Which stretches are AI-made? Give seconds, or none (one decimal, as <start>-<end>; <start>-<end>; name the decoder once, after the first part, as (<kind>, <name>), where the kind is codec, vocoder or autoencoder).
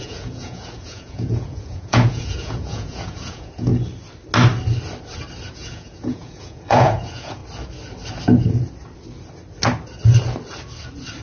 0.0-3.7 (vocoder, Vocos); 5.5-7.4